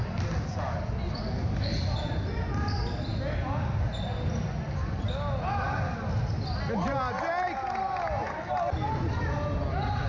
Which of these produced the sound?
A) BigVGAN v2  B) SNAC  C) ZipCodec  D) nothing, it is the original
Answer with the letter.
D